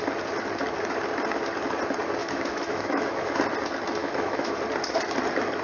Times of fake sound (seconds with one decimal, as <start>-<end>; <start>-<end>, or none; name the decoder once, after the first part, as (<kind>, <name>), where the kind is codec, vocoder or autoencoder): 2.2-3.4 (autoencoder, DAC-VAE); 4.0-4.6